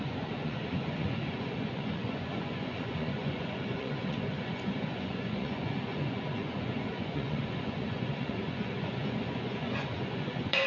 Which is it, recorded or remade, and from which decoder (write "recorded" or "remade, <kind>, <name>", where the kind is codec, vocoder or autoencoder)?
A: remade, vocoder, Vocos